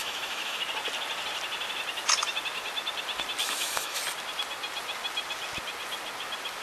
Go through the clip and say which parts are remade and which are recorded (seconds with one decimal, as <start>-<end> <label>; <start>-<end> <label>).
0.0-0.6 remade; 0.6-3.4 recorded; 3.4-4.0 remade; 4.0-6.6 recorded

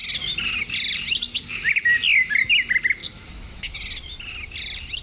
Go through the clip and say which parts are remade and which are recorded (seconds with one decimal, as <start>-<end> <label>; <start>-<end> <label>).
0.0-3.0 recorded; 3.0-3.6 remade; 3.6-5.0 recorded

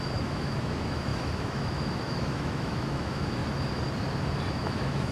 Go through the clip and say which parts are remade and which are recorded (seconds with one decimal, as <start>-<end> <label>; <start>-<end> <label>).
0.0-3.4 remade; 3.4-4.5 recorded; 4.5-5.1 remade

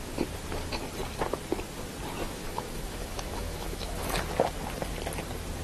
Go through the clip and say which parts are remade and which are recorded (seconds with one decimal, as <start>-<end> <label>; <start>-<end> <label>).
0.0-2.2 recorded; 2.2-4.2 remade; 4.2-5.6 recorded

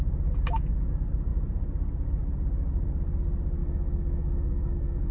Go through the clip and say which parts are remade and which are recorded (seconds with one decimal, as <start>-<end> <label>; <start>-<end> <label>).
0.0-3.6 recorded; 3.6-5.1 remade

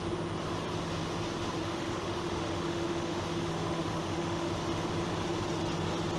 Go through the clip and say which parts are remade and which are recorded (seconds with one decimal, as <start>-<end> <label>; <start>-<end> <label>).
0.0-1.6 recorded; 1.6-4.5 remade; 4.5-6.2 recorded

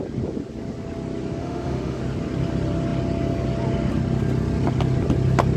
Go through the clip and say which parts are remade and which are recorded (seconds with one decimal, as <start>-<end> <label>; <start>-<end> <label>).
0.0-1.4 recorded; 1.4-2.0 remade; 2.0-5.6 recorded